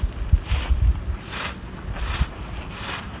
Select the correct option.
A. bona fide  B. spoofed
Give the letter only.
A